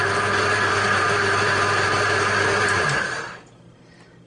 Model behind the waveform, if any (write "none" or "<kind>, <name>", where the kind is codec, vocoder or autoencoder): none